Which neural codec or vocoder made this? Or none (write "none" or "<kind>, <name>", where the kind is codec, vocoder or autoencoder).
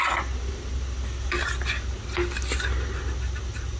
none